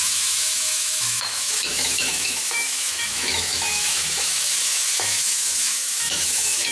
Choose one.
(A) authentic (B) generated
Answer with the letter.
B